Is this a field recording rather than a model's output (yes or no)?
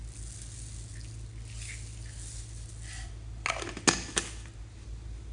yes